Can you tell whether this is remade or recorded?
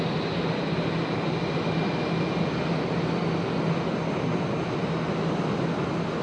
recorded